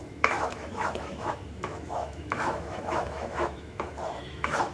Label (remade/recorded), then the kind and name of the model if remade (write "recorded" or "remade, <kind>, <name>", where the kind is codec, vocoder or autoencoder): remade, autoencoder, DAC-VAE